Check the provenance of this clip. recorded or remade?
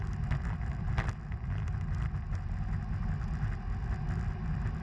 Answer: recorded